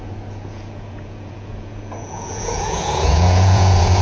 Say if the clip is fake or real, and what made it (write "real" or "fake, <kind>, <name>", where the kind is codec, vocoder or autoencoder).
fake, vocoder, Vocos